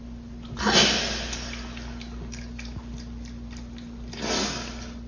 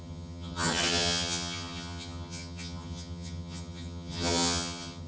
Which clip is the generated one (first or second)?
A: second